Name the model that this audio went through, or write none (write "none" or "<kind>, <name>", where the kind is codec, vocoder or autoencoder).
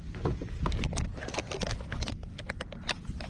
none